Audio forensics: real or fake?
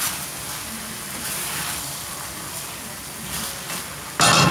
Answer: real